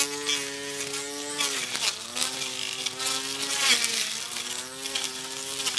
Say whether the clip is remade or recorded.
recorded